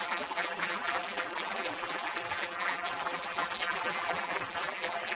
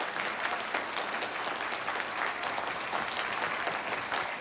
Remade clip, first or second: first